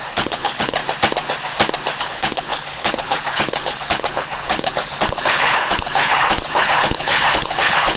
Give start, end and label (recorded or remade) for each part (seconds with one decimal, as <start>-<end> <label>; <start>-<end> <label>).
0.0-0.8 remade; 0.8-2.0 recorded; 2.0-8.0 remade